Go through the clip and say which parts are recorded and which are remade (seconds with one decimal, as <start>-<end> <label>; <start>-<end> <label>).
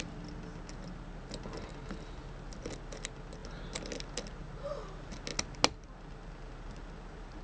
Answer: 0.0-7.4 recorded